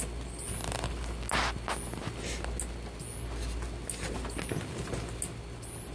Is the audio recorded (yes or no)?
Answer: yes